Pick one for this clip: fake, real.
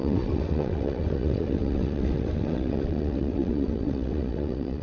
fake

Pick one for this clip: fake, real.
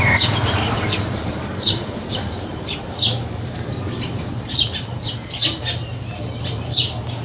fake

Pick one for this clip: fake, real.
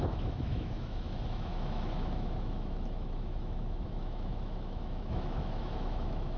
fake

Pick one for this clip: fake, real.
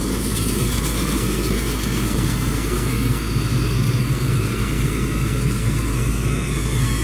fake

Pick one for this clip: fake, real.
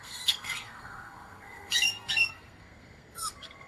fake